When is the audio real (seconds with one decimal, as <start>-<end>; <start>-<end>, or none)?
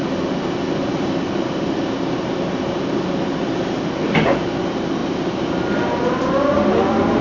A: 0.0-7.2